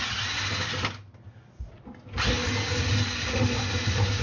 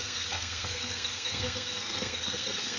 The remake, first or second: second